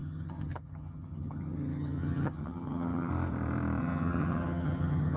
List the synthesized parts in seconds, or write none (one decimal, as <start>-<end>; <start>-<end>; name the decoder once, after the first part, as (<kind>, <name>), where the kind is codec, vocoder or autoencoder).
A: 0.0-3.1 (vocoder, HiFi-GAN); 3.8-5.2